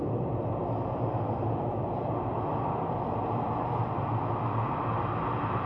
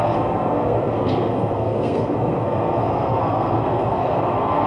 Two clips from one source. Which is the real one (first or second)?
first